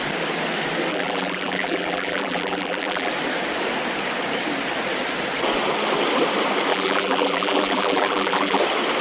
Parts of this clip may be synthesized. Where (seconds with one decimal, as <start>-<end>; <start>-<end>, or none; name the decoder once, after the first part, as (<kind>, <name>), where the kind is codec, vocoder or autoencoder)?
0.9-3.1 (vocoder, BigVGAN v2); 6.7-8.6

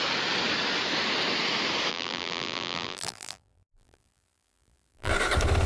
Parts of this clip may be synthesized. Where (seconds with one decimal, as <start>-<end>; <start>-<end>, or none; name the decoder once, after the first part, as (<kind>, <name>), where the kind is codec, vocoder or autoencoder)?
1.9-5.1 (vocoder, BigVGAN v2)

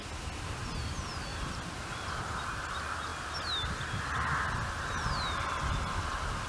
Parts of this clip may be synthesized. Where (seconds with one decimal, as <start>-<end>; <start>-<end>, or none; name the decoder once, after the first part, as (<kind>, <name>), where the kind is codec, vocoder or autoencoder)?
1.3-2.1 (vocoder, BigVGAN v2)

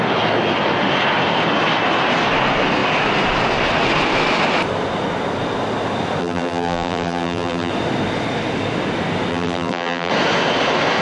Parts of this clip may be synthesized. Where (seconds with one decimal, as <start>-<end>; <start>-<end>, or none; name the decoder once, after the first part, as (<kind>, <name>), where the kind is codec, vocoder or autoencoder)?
6.2-7.7 (vocoder, BigVGAN v2); 9.3-10.1

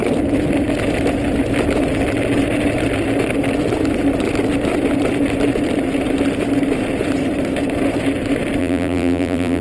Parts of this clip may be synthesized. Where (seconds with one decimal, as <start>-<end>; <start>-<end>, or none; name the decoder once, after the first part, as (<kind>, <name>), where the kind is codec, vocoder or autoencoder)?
8.6-9.6 (vocoder, BigVGAN v2)

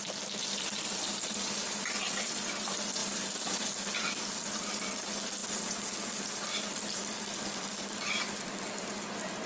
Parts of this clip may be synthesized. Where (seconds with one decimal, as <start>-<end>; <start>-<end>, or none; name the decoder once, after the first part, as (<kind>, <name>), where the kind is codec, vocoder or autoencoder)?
3.0-3.7 (vocoder, BigVGAN v2)